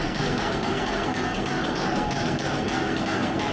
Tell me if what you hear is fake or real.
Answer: fake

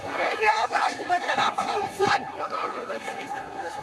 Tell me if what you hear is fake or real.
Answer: fake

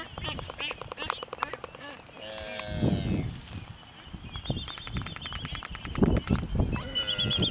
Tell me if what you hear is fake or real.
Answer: real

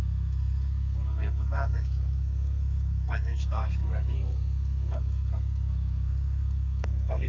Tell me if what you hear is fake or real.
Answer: fake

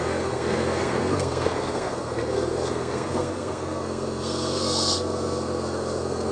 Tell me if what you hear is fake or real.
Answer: fake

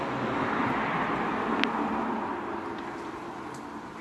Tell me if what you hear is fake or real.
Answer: real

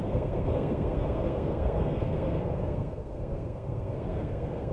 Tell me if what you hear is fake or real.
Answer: fake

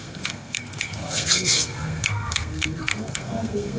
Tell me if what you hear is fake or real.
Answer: fake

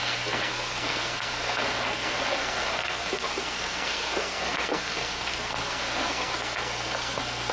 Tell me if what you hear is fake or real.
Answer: fake